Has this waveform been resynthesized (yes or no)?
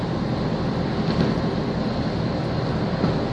no